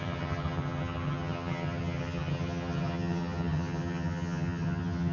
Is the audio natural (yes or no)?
no